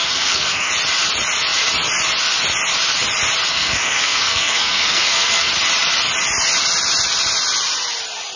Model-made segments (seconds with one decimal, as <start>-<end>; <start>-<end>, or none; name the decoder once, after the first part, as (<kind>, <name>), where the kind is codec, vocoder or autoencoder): 0.0-0.7 (codec, SNAC); 3.5-5.5